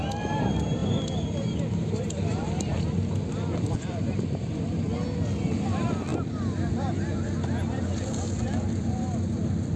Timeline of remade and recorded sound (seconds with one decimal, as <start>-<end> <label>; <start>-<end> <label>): 0.0-9.8 recorded

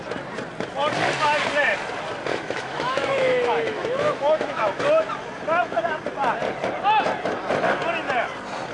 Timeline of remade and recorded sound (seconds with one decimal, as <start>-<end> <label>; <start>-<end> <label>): 0.0-2.3 recorded; 2.3-4.8 remade; 4.8-8.7 recorded

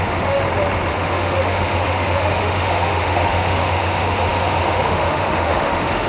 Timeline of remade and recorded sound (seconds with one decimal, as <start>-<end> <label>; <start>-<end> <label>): 0.0-0.4 remade; 0.4-0.9 recorded; 0.9-6.1 remade

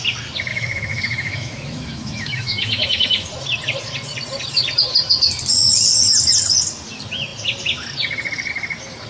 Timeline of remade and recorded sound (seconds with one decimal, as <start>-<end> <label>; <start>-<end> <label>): 0.0-0.5 recorded; 0.5-3.3 remade; 3.3-9.1 recorded

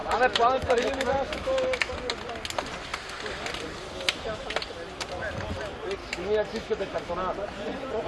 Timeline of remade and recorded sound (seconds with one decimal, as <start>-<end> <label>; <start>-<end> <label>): 0.0-1.9 remade; 1.9-6.0 recorded; 6.0-7.1 remade; 7.1-8.1 recorded

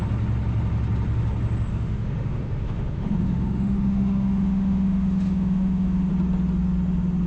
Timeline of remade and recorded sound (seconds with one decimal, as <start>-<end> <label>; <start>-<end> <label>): 0.0-1.7 recorded; 1.7-6.1 remade; 6.1-7.3 recorded

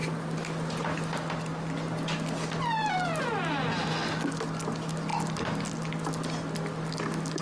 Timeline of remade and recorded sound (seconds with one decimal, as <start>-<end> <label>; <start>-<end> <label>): 0.0-7.4 recorded

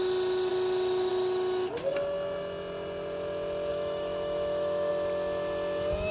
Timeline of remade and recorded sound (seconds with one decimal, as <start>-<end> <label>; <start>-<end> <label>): 0.0-3.7 recorded; 3.7-4.9 remade; 4.9-6.1 recorded